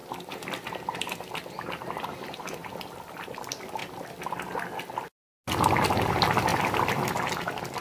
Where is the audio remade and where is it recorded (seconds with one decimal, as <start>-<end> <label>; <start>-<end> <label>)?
0.0-3.8 remade; 3.8-5.7 recorded; 5.7-7.8 remade